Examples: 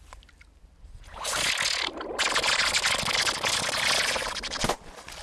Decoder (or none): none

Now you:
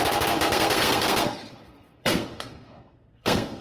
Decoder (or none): codec, SNAC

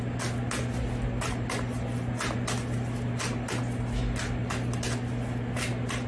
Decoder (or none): none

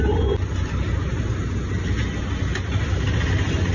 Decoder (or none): none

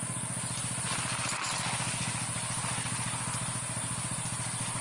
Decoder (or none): none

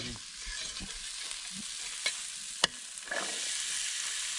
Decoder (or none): none